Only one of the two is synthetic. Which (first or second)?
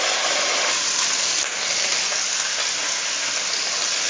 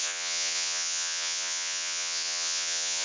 second